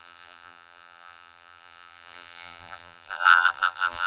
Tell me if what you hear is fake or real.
fake